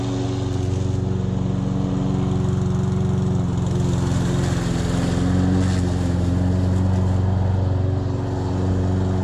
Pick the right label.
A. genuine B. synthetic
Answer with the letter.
A